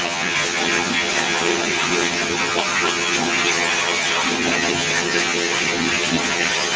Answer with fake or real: fake